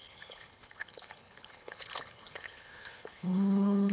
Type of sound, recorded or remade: remade